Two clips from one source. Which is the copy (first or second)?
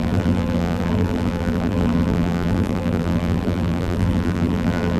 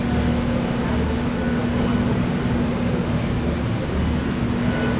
first